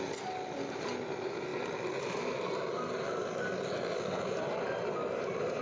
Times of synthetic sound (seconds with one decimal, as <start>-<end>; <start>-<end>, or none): none